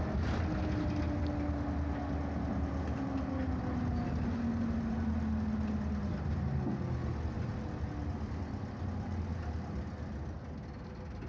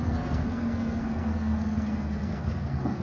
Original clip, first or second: first